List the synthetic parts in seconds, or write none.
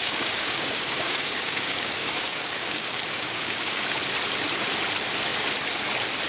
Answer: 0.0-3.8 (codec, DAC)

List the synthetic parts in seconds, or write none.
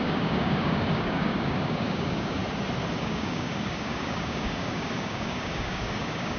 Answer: 0.0-2.4 (codec, DAC); 3.0-6.4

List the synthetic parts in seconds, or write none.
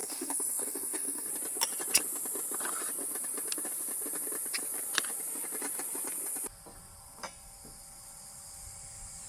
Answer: 0.0-1.3 (codec, DAC)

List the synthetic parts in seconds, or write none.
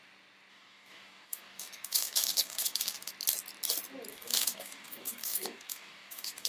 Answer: 0.5-3.1 (codec, DAC); 4.1-6.5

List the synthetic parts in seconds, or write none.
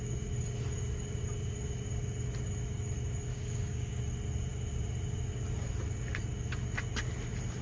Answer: 3.3-4.0 (codec, DAC)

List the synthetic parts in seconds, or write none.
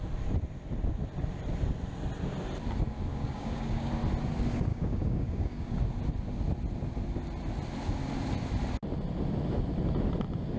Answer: 3.1-3.9 (codec, DAC); 4.7-5.8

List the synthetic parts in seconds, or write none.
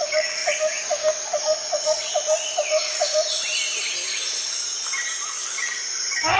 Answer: 0.0-2.1 (codec, DAC); 5.4-6.4